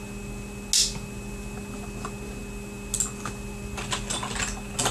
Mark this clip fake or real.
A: real